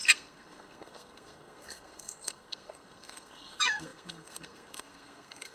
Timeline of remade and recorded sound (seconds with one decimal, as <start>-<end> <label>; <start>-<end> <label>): 0.0-5.5 remade